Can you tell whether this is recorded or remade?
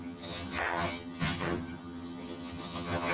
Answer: remade